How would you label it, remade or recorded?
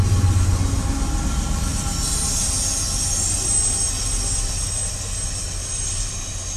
recorded